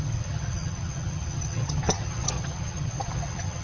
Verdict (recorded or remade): remade